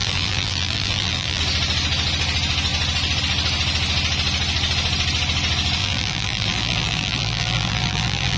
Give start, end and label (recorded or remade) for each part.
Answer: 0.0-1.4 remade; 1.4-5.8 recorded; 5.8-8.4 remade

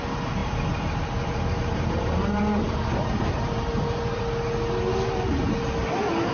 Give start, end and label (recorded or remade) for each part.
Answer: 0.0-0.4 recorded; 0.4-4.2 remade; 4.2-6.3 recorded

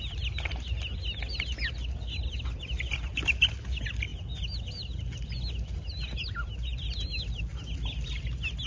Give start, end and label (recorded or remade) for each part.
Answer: 0.0-8.7 recorded